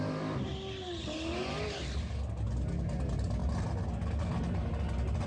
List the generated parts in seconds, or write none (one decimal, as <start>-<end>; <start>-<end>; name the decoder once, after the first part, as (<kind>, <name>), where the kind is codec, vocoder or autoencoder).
none